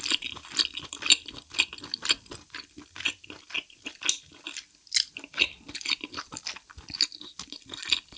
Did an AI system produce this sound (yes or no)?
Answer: no